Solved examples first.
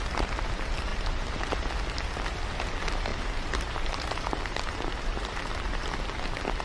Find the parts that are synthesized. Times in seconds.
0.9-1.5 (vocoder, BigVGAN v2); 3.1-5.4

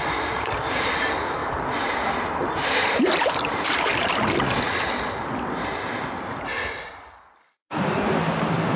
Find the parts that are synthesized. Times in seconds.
0.0-3.9 (vocoder, BigVGAN v2); 7.0-8.8

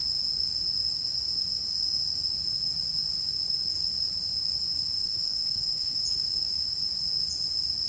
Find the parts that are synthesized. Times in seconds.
5.0-6.0 (autoencoder, DAC-VAE)

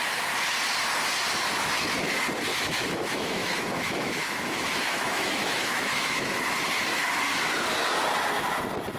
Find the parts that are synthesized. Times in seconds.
2.5-6.4 (autoencoder, DAC-VAE)

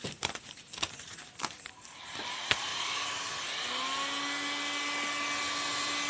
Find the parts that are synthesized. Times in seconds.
none